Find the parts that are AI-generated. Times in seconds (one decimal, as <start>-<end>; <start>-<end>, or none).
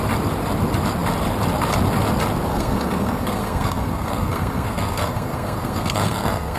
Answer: 2.5-6.6